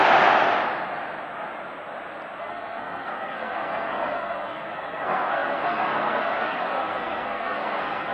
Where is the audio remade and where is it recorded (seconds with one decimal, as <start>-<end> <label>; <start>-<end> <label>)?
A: 0.0-2.4 recorded; 2.4-8.1 remade